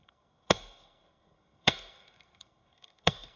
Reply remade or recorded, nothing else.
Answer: remade